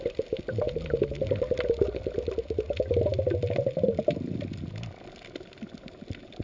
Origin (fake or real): real